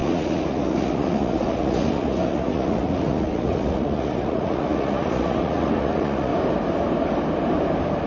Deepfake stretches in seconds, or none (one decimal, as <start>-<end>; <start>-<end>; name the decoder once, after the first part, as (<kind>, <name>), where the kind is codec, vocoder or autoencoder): 0.0-6.3 (vocoder, Vocos)